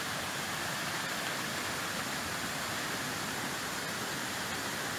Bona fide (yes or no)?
yes